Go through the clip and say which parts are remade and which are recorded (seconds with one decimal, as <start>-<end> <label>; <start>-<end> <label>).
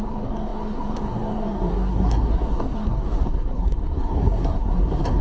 0.0-5.2 remade